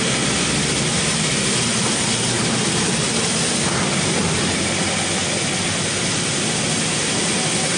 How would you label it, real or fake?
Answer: real